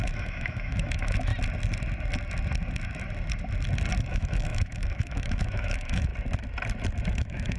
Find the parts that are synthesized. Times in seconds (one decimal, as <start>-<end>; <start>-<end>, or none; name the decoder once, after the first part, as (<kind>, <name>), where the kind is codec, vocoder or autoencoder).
0.0-1.3 (autoencoder, DAC-VAE); 4.1-6.1; 7.1-7.6